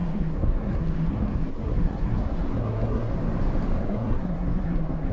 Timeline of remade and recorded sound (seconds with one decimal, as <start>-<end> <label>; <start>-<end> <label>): 0.0-3.1 remade; 3.1-3.8 recorded; 3.8-5.1 remade